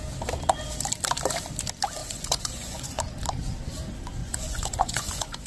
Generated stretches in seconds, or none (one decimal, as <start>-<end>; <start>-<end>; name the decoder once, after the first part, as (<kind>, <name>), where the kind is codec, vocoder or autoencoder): 2.0-3.0 (vocoder, Vocos); 4.2-5.5